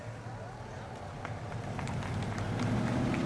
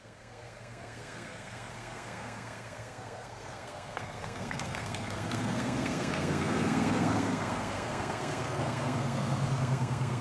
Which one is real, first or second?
first